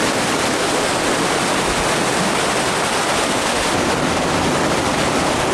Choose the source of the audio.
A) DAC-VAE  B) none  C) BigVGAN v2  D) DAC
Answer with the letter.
B